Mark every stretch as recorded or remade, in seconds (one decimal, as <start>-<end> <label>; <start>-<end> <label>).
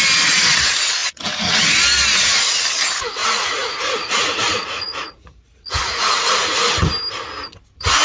0.0-3.2 recorded; 3.2-6.7 remade; 6.7-8.0 recorded